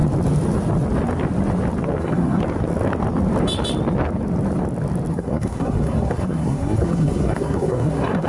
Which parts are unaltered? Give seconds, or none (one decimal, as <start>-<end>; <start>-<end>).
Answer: 0.0-2.0; 2.4-5.1